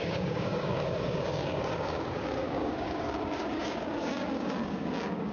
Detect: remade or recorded remade